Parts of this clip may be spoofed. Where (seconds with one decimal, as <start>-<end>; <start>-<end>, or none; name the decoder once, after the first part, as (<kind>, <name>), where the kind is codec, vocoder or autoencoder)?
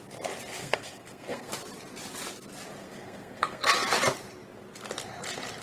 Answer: 0.6-1.5 (codec, SNAC); 2.8-3.7